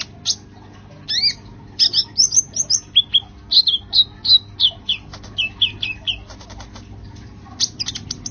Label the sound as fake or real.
real